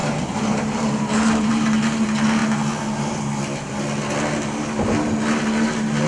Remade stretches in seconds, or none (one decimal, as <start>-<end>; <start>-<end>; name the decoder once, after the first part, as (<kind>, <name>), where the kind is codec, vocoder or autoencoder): 0.0-1.5 (vocoder, BigVGAN v2)